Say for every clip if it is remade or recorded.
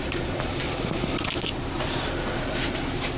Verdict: remade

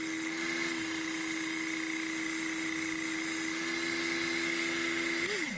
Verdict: recorded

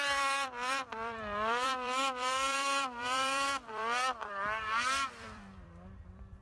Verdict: remade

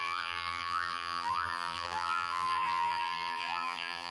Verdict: remade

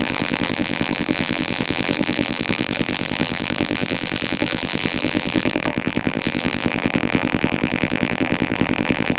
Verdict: remade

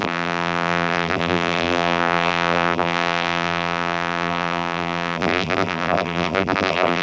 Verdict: remade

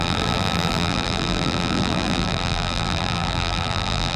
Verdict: remade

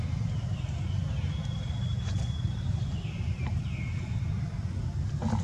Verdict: recorded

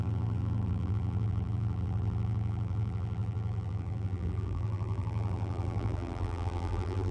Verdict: remade